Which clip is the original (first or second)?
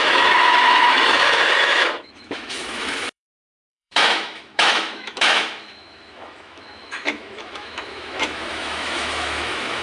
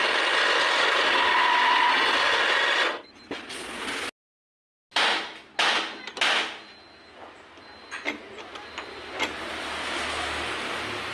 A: second